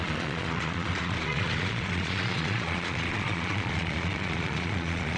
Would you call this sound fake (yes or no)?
yes